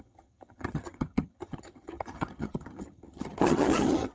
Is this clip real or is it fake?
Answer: fake